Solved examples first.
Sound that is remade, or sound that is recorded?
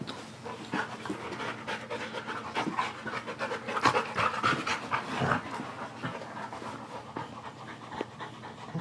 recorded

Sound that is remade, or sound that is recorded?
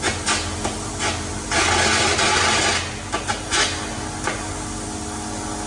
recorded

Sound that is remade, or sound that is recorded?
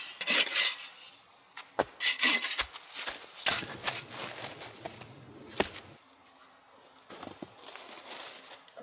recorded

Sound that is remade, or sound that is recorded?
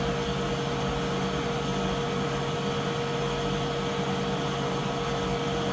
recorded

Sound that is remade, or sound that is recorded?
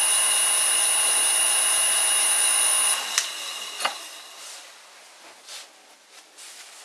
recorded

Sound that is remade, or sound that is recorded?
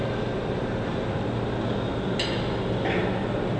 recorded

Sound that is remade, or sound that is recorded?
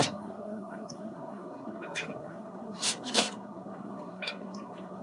remade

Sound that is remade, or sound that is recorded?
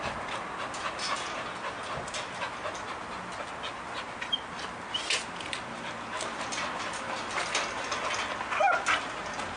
recorded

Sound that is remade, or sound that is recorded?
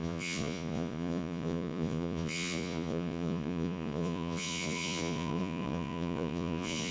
remade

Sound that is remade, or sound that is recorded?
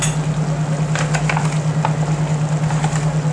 recorded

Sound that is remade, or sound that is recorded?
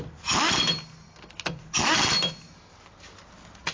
recorded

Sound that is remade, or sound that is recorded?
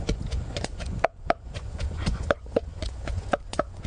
remade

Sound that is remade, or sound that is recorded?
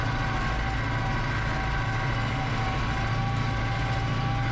recorded